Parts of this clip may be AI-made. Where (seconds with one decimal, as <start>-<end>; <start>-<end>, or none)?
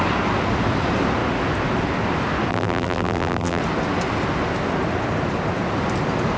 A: 2.5-3.6